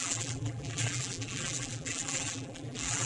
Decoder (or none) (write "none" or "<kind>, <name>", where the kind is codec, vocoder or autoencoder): vocoder, BigVGAN v2